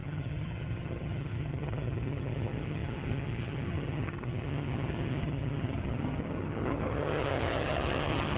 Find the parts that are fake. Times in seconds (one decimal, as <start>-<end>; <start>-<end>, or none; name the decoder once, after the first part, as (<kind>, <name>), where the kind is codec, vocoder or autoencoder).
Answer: 0.0-8.4 (vocoder, HiFi-GAN)